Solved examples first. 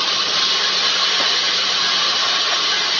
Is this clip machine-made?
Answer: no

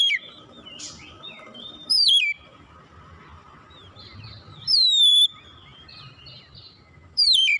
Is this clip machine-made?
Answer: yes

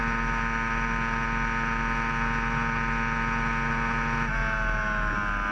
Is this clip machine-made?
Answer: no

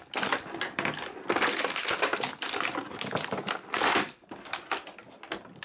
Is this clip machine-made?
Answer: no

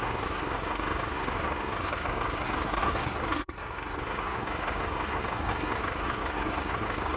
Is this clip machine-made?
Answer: yes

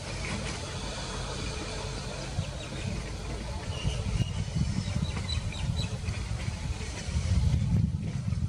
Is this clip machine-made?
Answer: yes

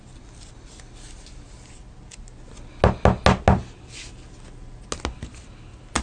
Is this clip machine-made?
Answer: no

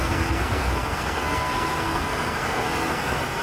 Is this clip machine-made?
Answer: yes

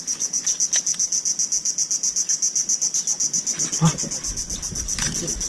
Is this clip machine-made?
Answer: no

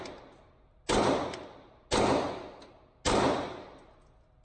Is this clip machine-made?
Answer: no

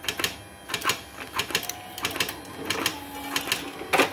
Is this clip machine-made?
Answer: no